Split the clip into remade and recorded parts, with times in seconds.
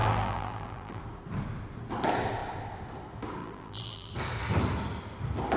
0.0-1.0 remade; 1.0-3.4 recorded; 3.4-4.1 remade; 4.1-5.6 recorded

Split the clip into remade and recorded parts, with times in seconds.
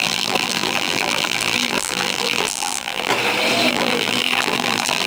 0.0-3.1 remade; 3.1-3.7 recorded; 3.7-5.1 remade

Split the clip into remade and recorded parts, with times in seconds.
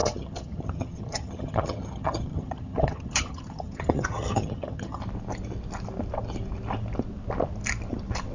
0.0-5.0 remade; 5.0-8.3 recorded